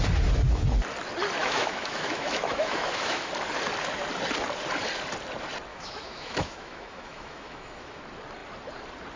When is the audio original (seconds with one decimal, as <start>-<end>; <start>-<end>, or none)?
0.0-1.4; 3.3-5.7; 8.0-9.2